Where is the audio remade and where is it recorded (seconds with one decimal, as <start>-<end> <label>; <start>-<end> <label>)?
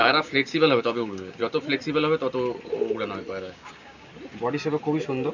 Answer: 0.0-1.4 remade; 1.4-3.4 recorded; 3.4-4.1 remade; 4.1-5.3 recorded